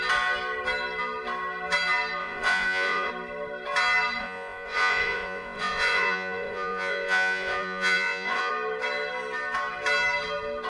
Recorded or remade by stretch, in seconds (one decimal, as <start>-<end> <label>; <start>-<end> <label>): 0.0-2.2 recorded; 2.2-3.1 remade; 3.1-4.2 recorded; 4.2-8.5 remade; 8.5-10.7 recorded